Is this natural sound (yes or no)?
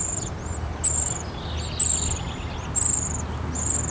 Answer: yes